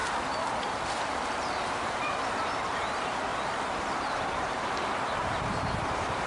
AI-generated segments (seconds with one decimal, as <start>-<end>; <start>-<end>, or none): 0.9-3.3; 4.3-6.3